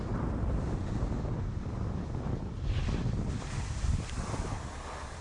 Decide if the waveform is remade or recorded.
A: recorded